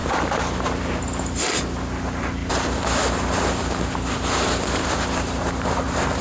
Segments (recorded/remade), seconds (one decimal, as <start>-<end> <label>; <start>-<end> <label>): 0.0-6.2 recorded